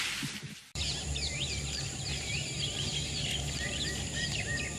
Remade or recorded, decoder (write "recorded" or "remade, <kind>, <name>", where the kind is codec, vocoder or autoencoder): remade, vocoder, BigVGAN v2